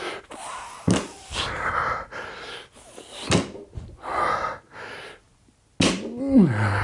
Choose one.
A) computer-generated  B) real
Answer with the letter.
B